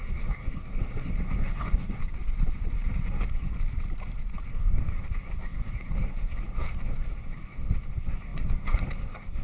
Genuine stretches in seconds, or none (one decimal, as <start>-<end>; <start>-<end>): 2.0-3.1; 3.5-4.5